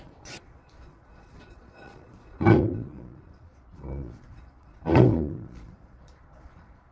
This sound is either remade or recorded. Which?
remade